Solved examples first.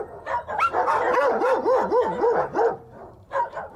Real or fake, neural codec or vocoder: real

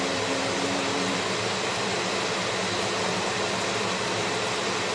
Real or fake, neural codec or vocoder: real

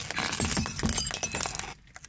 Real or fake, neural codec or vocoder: real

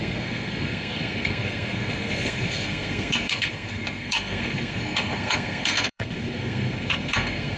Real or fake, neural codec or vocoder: fake, codec, SNAC